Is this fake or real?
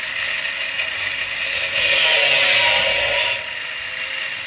real